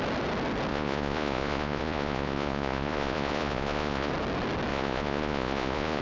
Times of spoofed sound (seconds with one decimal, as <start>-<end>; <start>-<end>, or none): 0.7-4.1; 4.7-6.0